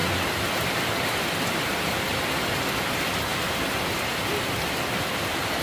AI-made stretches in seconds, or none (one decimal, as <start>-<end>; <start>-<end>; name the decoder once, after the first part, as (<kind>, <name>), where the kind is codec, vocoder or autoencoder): none